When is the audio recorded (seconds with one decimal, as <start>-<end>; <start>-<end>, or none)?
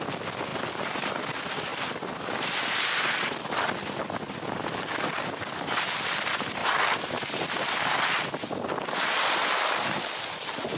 0.5-1.1; 6.6-7.6